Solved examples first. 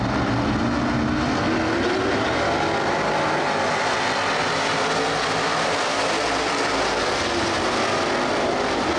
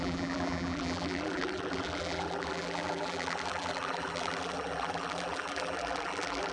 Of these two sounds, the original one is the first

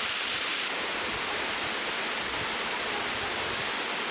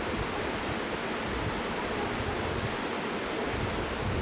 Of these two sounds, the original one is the second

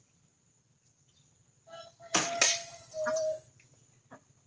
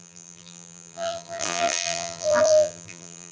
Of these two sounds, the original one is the first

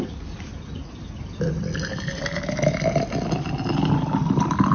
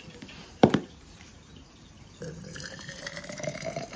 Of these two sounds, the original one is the first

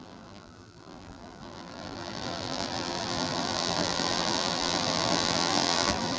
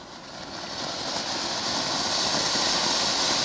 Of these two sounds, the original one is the second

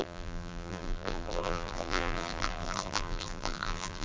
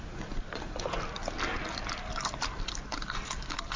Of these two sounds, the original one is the second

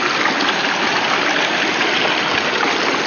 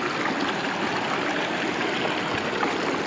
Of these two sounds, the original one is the second